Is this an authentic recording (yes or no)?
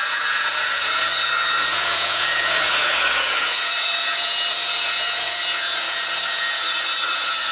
no